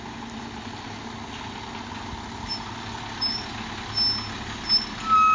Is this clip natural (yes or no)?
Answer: yes